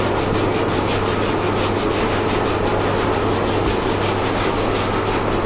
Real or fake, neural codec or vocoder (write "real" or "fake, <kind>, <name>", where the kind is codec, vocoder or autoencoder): real